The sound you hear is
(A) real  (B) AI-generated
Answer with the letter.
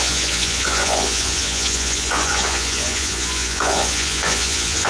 B